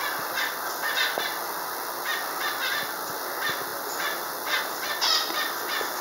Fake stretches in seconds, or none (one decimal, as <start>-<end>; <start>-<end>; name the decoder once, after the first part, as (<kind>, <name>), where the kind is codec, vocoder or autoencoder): none